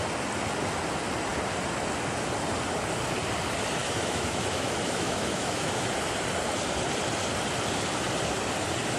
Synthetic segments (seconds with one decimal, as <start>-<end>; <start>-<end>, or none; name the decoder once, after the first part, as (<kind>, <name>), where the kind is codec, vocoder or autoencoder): 3.8-5.9 (autoencoder, DAC-VAE)